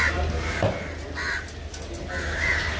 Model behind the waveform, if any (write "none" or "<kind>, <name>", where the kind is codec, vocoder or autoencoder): none